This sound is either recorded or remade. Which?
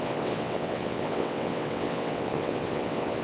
remade